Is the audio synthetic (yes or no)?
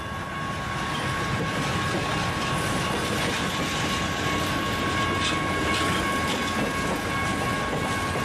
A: no